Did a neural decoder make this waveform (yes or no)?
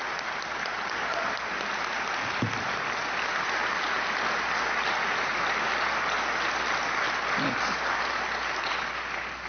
no